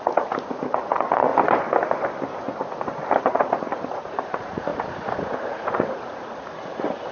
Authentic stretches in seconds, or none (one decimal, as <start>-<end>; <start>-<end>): 1.3-3.2